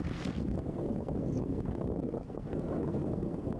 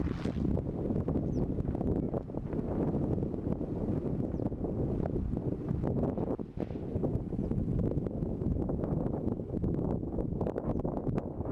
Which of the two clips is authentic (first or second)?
second